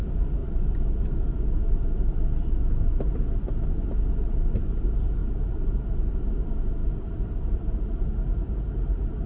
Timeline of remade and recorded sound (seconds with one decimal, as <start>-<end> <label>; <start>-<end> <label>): 0.0-9.3 recorded